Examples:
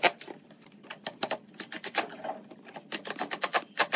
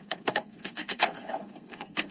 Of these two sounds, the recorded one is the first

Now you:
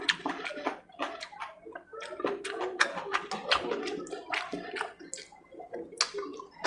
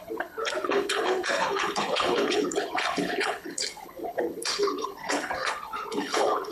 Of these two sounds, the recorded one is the first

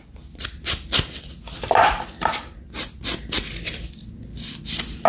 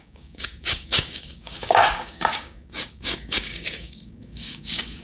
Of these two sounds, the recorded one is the first